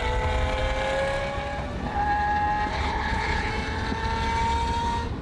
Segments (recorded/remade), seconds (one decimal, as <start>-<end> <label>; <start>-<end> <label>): 0.0-2.7 recorded; 2.7-3.5 remade; 3.5-5.2 recorded